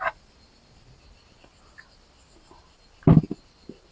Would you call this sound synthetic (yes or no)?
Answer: no